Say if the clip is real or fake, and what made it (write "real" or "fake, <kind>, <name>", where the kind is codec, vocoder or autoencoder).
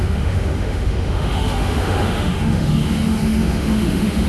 fake, autoencoder, DAC-VAE